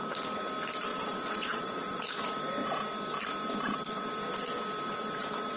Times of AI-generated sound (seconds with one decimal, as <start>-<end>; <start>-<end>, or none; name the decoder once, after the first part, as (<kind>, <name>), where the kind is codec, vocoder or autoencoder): 0.9-2.0 (vocoder, Vocos)